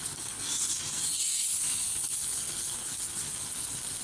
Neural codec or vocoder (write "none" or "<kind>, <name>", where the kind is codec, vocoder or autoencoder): codec, SNAC